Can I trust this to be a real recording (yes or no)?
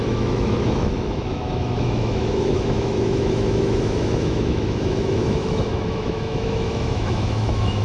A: no